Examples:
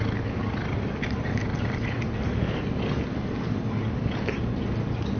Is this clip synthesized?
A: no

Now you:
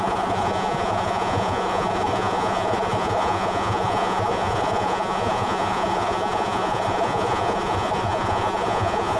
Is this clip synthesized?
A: yes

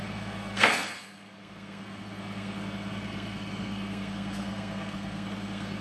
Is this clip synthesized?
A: yes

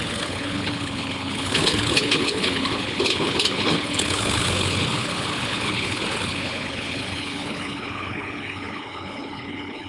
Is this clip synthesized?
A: yes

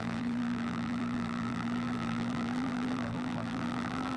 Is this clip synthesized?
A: yes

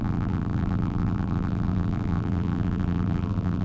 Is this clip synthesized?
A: yes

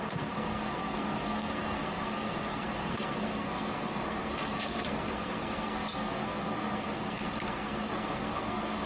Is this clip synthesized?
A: yes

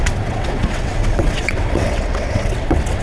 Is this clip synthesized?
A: yes